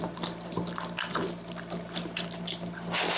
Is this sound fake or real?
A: fake